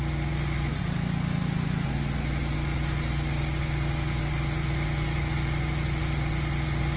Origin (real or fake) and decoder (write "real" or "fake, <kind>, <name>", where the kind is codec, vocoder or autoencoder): real